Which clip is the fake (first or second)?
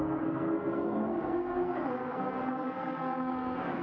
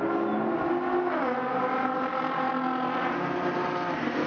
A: first